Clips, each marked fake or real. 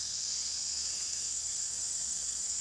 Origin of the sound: fake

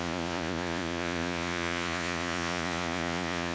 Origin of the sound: fake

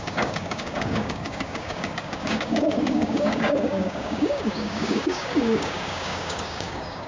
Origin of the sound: fake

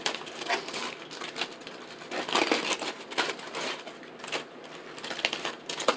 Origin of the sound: real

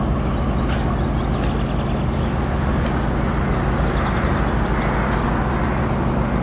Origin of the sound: real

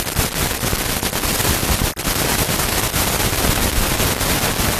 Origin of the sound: real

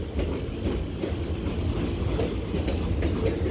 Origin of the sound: real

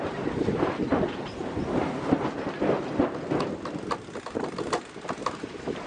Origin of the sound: real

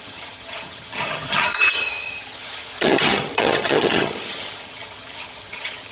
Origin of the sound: fake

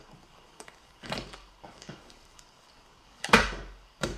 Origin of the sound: fake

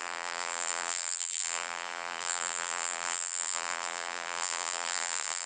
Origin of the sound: fake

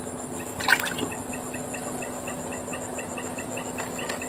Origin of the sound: real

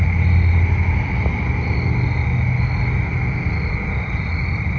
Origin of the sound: real